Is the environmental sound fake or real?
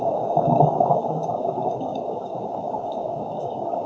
fake